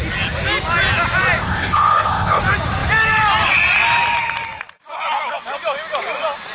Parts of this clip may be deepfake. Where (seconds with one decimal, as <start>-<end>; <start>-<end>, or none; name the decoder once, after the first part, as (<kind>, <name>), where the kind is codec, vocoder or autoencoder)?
1.4-2.4 (codec, ZipCodec)